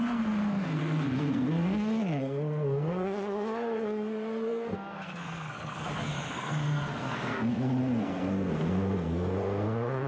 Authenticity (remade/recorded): remade